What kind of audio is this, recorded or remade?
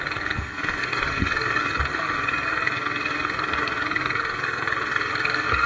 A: remade